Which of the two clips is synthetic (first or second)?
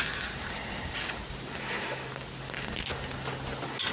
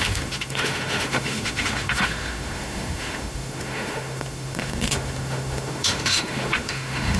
second